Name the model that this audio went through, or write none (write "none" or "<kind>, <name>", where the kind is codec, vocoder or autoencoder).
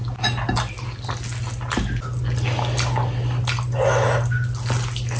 none